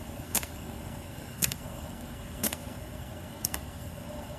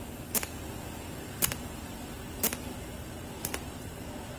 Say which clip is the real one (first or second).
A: second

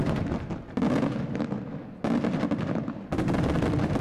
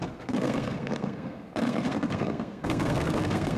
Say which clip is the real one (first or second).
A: first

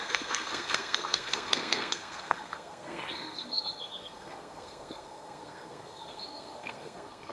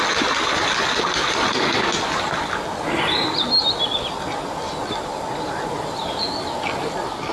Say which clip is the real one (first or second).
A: second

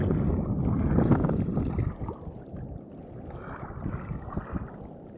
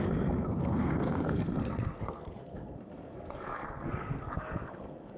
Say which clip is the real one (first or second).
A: first